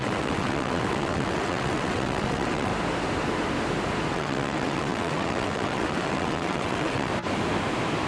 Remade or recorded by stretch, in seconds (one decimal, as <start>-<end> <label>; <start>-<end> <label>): 0.0-2.7 remade; 2.7-4.1 recorded; 4.1-7.1 remade; 7.1-8.1 recorded